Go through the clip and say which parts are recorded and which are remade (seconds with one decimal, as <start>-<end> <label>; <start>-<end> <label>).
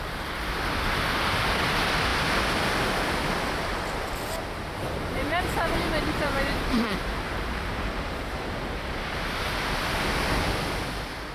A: 0.0-4.8 recorded; 4.8-8.2 remade; 8.2-11.3 recorded